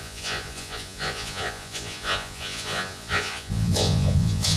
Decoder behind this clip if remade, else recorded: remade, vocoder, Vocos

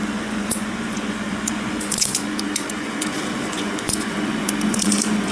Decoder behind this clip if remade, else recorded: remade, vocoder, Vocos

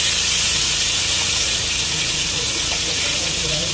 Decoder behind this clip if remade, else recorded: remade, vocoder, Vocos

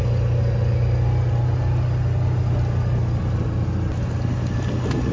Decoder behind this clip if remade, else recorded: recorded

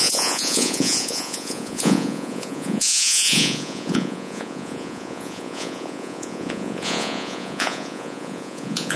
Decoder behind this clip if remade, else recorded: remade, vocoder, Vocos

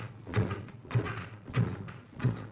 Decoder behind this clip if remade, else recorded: remade, vocoder, Vocos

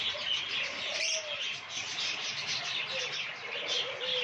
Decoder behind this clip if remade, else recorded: recorded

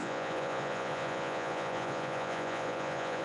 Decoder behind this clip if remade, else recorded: remade, vocoder, Vocos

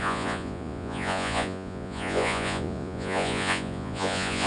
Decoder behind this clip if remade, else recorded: remade, vocoder, Vocos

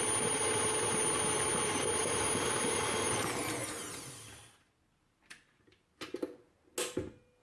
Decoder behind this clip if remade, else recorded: recorded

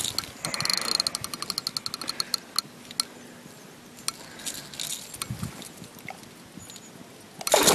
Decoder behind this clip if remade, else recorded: recorded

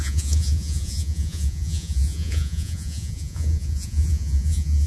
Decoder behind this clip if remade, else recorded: remade, vocoder, Vocos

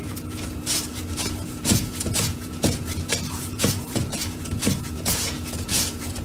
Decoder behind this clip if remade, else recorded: remade, vocoder, Vocos